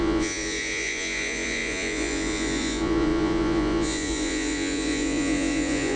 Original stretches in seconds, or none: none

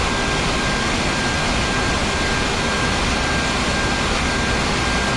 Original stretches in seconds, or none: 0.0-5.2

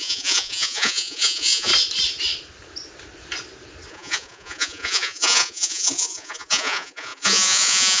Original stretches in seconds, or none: 1.7-3.9

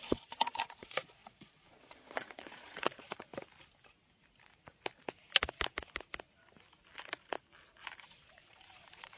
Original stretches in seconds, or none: 3.3-8.0